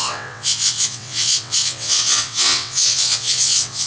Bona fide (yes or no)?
no